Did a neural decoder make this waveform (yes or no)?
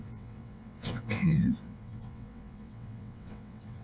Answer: yes